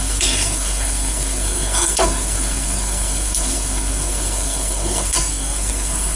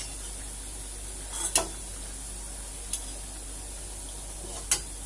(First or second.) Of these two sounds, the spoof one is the first